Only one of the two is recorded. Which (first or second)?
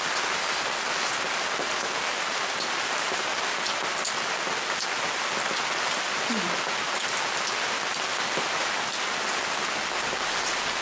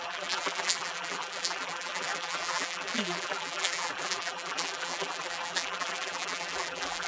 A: first